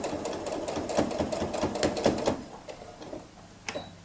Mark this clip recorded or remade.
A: recorded